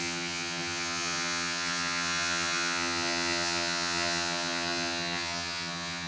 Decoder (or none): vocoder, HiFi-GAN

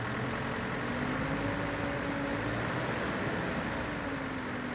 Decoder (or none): none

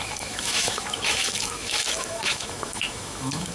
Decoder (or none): autoencoder, DAC-VAE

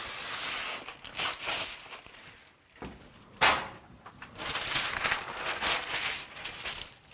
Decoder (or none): none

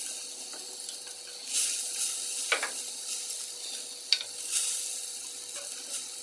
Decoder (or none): none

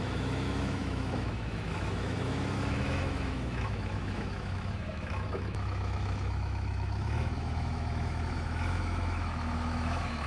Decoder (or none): autoencoder, DAC-VAE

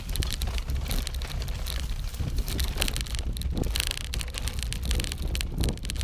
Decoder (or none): none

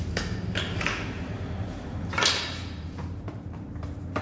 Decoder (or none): vocoder, BigVGAN v2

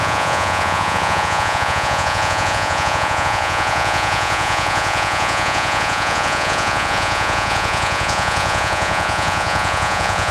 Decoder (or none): vocoder, Vocos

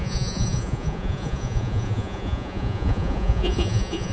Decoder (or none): vocoder, Vocos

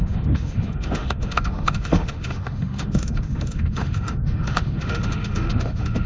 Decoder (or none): autoencoder, DAC-VAE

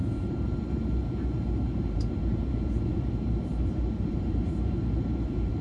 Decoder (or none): vocoder, BigVGAN v2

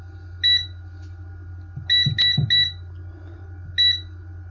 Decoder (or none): none